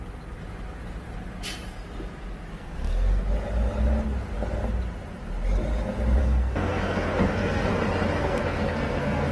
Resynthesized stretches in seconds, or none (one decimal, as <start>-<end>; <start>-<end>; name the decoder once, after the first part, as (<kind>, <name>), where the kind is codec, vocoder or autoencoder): 2.5-3.2 (codec, SNAC); 6.2-7.7; 8.2-9.3